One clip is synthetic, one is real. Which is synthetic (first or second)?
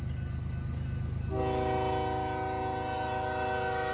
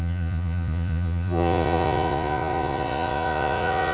second